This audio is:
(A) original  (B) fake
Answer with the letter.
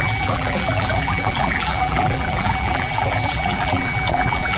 B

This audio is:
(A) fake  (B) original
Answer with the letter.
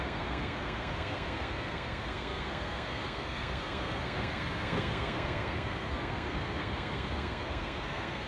A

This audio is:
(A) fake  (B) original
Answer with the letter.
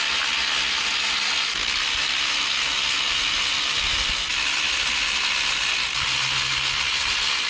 B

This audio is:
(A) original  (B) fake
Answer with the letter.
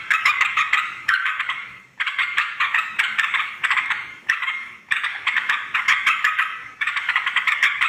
B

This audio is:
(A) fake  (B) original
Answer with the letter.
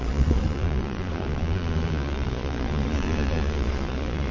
A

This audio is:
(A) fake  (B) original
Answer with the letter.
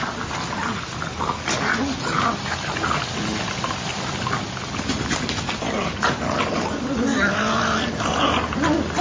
B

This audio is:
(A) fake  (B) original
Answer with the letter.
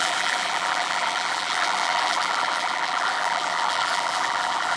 A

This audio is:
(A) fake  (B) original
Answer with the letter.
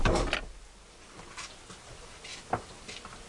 B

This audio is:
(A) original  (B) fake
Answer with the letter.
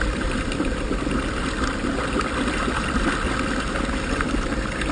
A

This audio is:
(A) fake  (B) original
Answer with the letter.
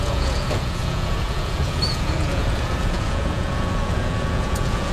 A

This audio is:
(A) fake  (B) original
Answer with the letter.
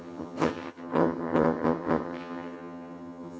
A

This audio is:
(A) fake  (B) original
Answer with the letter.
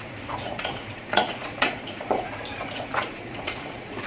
A